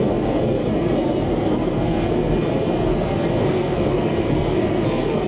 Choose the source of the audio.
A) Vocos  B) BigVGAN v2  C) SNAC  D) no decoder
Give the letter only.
C